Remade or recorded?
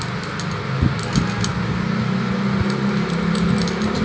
recorded